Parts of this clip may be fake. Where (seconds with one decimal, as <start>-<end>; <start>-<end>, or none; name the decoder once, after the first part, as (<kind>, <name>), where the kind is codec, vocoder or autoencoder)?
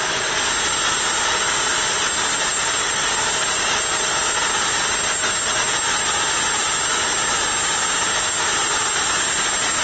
2.5-3.1 (vocoder, BigVGAN v2)